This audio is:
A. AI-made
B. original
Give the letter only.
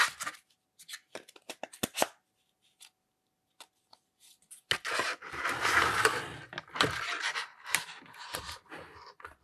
B